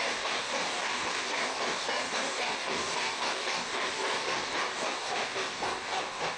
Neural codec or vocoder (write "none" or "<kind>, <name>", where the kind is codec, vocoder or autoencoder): codec, DAC